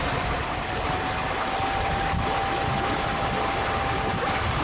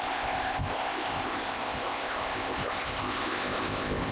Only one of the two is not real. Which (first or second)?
second